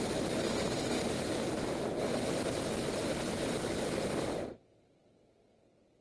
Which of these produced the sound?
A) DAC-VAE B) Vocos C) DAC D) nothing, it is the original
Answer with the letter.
D